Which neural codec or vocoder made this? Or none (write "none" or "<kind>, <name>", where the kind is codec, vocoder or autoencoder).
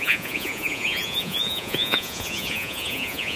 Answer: vocoder, Vocos